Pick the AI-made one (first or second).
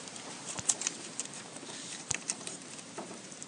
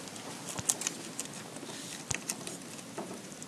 first